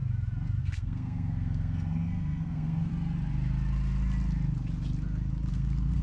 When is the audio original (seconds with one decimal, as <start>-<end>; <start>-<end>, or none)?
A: 0.0-0.6; 2.9-5.5